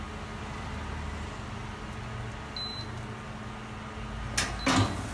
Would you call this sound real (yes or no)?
yes